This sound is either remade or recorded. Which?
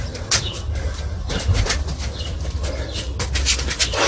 recorded